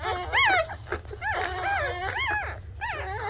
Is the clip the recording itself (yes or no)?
yes